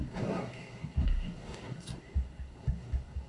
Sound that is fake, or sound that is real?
fake